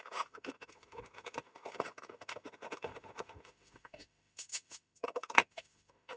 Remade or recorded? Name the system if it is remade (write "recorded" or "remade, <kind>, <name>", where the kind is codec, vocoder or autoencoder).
remade, autoencoder, DAC-VAE